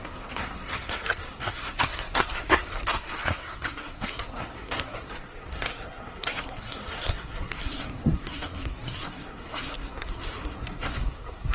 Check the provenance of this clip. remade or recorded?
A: remade